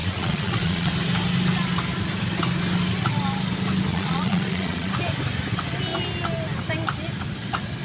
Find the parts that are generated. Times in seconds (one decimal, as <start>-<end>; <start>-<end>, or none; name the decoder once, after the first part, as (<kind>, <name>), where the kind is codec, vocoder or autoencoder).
0.0-0.9 (vocoder, Vocos); 3.9-4.9